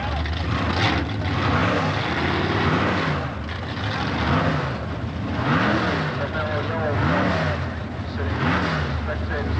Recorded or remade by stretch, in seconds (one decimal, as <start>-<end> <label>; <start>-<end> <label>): 0.0-9.6 recorded